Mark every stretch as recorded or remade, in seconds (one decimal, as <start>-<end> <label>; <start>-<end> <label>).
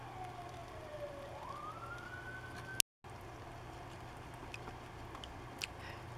0.0-6.2 recorded